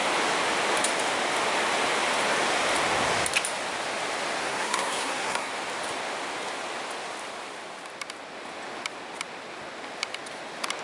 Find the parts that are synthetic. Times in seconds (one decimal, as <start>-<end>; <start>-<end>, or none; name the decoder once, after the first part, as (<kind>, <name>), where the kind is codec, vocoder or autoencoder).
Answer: 4.4-5.5 (codec, SNAC)